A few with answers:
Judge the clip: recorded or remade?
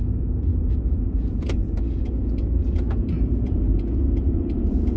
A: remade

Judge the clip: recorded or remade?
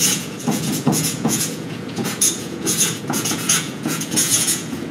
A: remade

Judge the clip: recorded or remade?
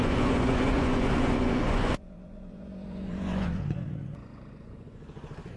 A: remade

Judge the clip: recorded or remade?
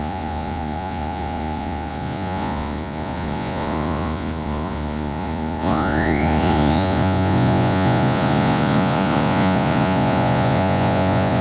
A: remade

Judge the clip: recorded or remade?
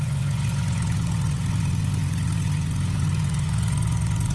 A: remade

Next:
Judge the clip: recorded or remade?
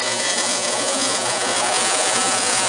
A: remade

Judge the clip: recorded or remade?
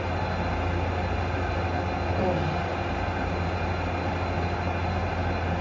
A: recorded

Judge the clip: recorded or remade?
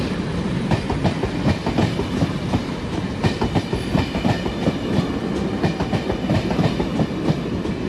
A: recorded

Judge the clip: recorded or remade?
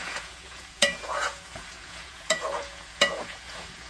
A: remade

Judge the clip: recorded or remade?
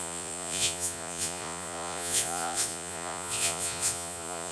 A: remade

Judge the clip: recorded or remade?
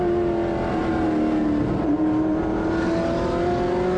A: recorded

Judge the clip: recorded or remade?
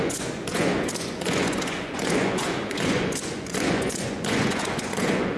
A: remade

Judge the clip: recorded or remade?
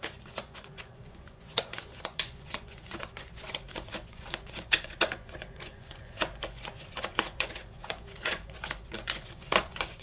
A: remade